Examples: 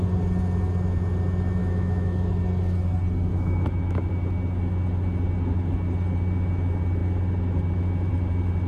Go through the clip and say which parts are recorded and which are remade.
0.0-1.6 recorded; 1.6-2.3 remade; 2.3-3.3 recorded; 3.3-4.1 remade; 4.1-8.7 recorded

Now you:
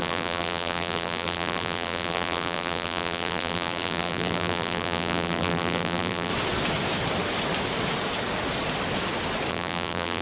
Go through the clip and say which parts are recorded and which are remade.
0.0-6.3 remade; 6.3-9.5 recorded; 9.5-10.2 remade

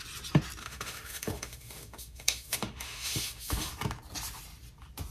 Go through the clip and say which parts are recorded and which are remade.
0.0-0.6 recorded; 0.6-3.7 remade; 3.7-5.1 recorded

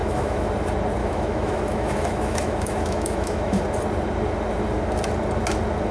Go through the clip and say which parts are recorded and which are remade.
0.0-0.5 remade; 0.5-1.0 recorded; 1.0-3.6 remade; 3.6-5.9 recorded

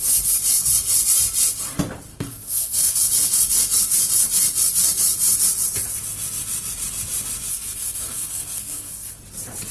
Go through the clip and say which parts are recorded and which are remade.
0.0-2.1 recorded; 2.1-3.1 remade; 3.1-7.5 recorded; 7.5-9.2 remade; 9.2-9.7 recorded

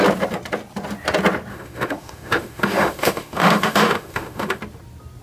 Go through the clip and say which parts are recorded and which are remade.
0.0-1.5 recorded; 1.5-4.6 remade; 4.6-5.2 recorded

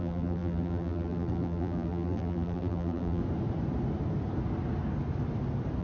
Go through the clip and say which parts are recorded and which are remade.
0.0-3.2 remade; 3.2-5.8 recorded

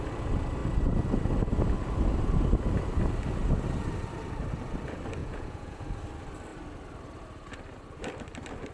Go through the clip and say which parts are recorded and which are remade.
0.0-5.2 recorded; 5.2-5.8 remade; 5.8-8.7 recorded